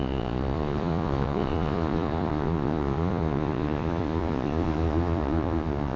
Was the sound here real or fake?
fake